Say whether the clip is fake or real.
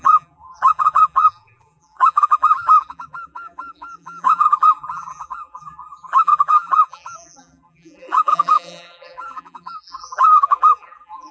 fake